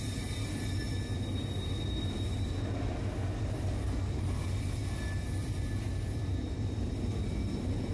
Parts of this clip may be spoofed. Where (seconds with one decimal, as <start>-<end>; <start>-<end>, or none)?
none